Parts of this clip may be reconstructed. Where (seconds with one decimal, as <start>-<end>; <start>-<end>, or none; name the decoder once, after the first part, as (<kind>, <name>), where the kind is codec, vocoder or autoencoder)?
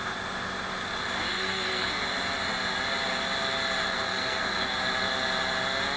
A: 1.3-1.9 (codec, SNAC); 3.8-4.7